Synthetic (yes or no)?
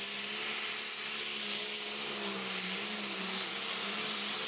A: no